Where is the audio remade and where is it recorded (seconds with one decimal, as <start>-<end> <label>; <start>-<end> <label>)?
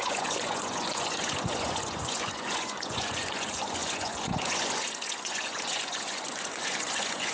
0.0-7.3 remade